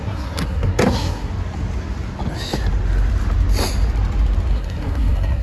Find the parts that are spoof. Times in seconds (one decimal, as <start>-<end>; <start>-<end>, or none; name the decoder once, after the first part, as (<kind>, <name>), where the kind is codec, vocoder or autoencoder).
0.0-1.3 (codec, SNAC); 4.5-5.4